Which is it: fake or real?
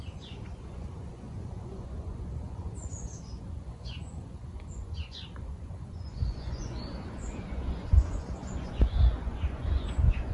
fake